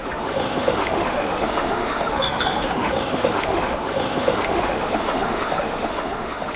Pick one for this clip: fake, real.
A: fake